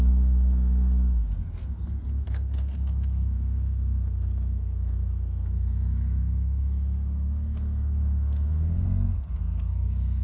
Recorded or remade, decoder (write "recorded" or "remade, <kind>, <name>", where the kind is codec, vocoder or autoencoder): remade, codec, SNAC